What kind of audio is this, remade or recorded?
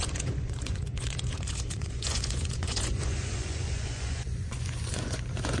remade